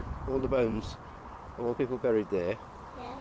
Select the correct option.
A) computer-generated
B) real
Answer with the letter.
A